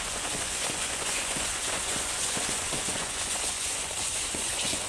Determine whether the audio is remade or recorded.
remade